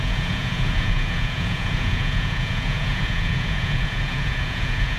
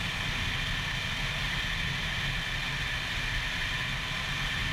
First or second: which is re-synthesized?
first